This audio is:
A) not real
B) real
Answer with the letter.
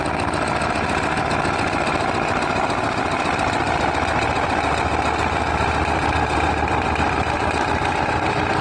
A